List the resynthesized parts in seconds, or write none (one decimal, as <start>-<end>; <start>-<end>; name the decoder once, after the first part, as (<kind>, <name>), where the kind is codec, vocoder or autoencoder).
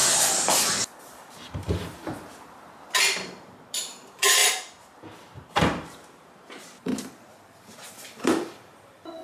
1.0-1.8 (vocoder, BigVGAN v2); 3.0-4.4; 5.5-6.9; 7.6-9.2